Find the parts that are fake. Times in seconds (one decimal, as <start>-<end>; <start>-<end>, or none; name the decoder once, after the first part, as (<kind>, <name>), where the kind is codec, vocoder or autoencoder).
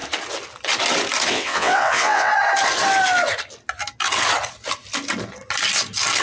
1.3-2.3 (vocoder, WaveNeXt)